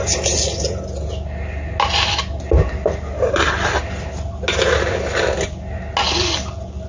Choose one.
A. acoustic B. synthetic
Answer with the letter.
A